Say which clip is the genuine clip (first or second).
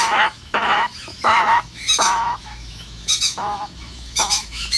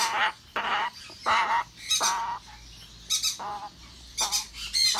second